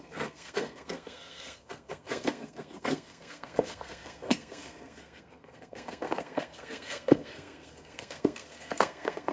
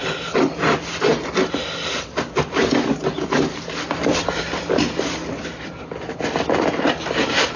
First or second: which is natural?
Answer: second